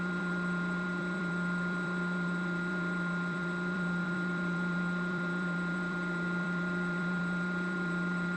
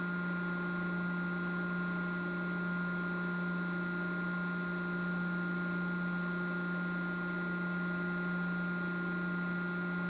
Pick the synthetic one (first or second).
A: first